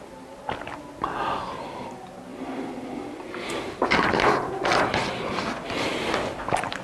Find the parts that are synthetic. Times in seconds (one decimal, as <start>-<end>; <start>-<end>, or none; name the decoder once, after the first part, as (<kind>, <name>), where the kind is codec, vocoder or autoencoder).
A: none